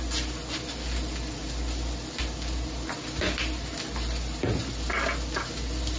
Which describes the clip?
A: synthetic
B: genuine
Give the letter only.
B